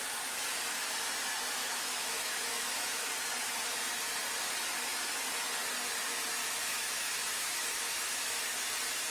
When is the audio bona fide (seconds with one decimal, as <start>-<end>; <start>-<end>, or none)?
0.0-1.6; 3.1-6.4; 8.4-9.1